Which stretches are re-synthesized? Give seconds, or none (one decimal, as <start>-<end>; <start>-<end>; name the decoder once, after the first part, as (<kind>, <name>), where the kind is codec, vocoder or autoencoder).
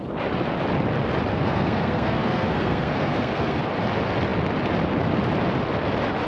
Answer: 1.3-3.6 (codec, SNAC)